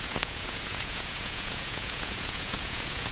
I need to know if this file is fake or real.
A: fake